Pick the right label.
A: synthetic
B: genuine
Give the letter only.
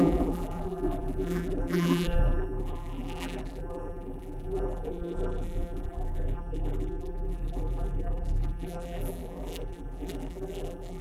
A